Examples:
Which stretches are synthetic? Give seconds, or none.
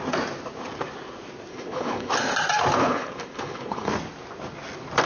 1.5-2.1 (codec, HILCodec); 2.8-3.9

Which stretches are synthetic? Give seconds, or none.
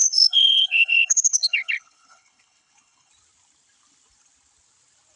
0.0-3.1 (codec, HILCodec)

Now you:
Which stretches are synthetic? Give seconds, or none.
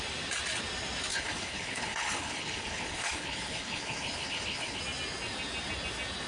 1.1-4.8 (codec, HILCodec)